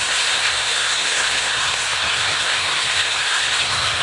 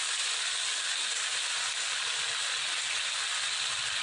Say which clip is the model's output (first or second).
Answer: first